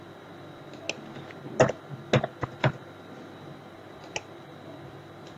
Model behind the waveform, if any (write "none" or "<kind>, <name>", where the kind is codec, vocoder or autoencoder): none